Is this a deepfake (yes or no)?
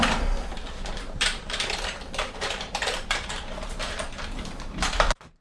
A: yes